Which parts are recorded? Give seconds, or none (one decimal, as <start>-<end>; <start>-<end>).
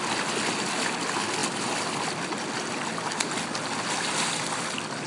0.0-5.1